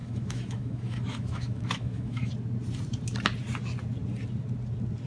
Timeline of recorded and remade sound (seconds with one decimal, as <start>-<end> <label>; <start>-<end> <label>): 0.0-2.3 remade; 2.3-5.1 recorded